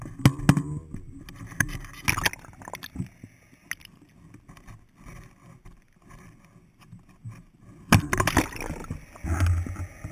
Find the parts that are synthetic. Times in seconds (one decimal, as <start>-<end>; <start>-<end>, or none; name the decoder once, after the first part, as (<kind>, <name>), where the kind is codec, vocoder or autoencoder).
none